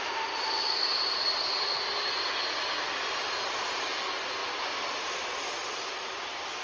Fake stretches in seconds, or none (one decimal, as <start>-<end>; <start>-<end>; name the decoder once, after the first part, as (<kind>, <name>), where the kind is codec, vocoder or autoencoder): none